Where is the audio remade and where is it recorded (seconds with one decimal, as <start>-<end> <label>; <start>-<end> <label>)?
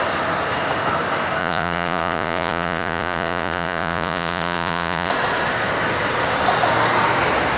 0.0-1.4 recorded; 1.4-5.1 remade; 5.1-7.6 recorded